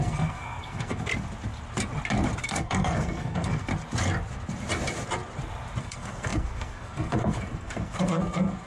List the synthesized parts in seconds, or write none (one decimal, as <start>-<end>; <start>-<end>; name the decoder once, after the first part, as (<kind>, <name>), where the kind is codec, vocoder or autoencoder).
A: 0.0-1.1 (codec, SNAC); 2.4-3.7; 5.8-8.7